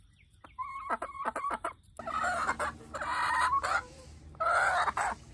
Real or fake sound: real